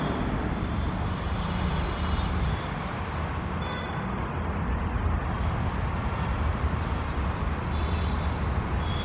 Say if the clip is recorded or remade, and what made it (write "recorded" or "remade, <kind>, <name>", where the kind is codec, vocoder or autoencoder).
recorded